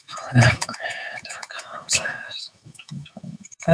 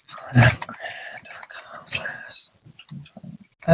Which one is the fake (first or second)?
first